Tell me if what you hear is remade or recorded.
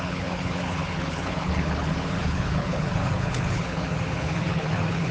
remade